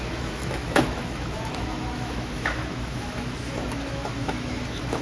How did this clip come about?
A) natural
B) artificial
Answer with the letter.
B